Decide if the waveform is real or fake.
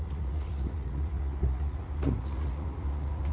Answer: fake